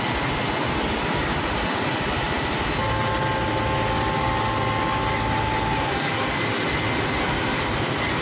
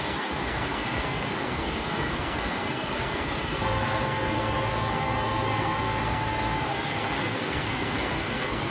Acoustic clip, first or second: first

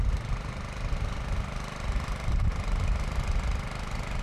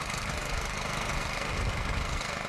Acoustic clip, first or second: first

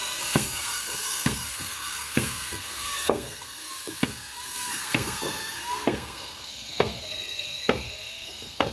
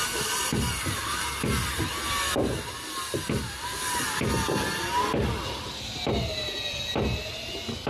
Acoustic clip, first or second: second